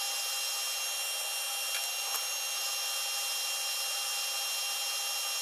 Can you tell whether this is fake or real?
real